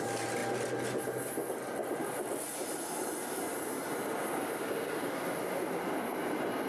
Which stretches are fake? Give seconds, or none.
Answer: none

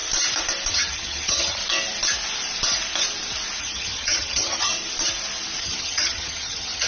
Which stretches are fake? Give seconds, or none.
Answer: 0.7-1.6 (vocoder, HiFi-GAN); 3.6-4.7; 5.6-6.9

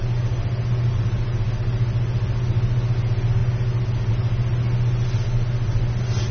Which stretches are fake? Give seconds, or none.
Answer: none

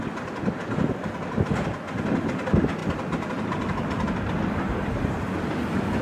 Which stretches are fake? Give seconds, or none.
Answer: 2.8-6.0 (vocoder, BigVGAN v2)

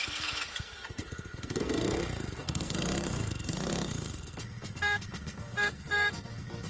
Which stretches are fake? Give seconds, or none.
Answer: 0.0-6.7 (codec, SNAC)

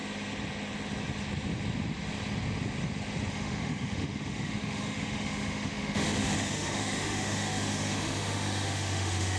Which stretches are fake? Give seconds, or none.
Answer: 3.3-9.4 (autoencoder, DAC-VAE)